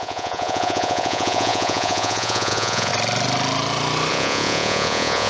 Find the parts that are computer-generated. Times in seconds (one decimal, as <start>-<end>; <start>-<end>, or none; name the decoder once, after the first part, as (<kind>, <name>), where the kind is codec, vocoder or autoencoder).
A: 0.0-2.9 (vocoder, Vocos); 4.1-5.3